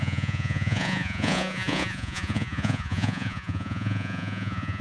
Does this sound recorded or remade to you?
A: remade